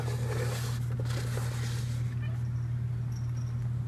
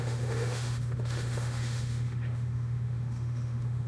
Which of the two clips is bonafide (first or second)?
first